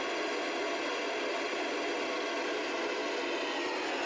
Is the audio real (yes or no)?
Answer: yes